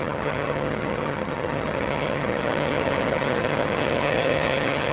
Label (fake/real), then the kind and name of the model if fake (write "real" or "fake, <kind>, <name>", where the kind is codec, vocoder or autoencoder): fake, vocoder, HiFi-GAN